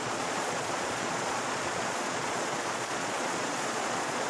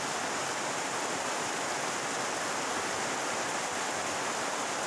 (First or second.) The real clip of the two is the second